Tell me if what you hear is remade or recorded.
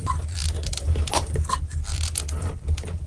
recorded